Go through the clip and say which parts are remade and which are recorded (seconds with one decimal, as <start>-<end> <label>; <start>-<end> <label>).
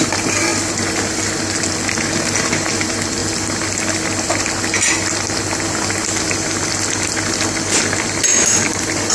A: 0.0-9.1 recorded